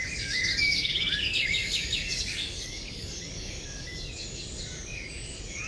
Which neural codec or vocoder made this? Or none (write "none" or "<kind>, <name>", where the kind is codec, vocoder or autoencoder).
codec, DAC